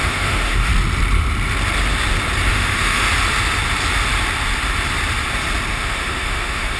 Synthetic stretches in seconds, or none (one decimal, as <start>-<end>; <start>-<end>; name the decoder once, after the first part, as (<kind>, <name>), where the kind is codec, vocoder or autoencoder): 0.0-0.7 (autoencoder, DAC-VAE); 2.5-3.0; 5.7-6.8